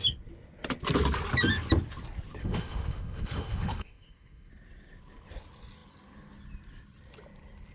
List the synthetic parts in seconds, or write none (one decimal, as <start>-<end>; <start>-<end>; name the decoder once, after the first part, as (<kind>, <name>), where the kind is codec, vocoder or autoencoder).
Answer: 2.4-4.5 (autoencoder, DAC-VAE)